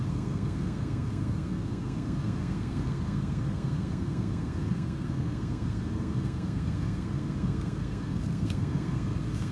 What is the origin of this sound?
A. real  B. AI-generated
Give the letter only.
B